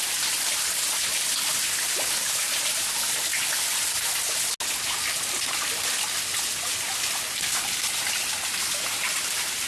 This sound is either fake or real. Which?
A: real